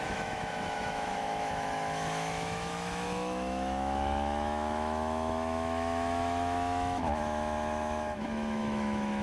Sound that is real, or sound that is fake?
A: fake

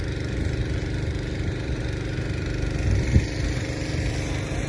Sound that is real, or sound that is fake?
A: real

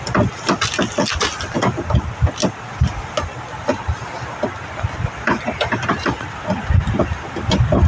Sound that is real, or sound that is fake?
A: real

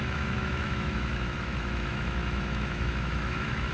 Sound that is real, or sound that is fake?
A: fake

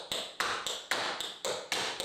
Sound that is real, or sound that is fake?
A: real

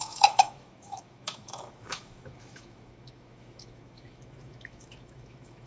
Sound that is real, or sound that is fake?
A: fake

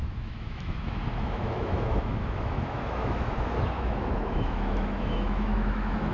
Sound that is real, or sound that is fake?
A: fake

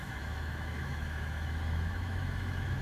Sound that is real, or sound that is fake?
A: fake